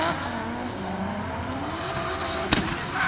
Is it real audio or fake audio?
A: real